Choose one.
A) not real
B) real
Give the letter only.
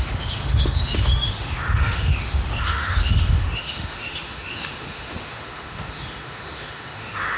A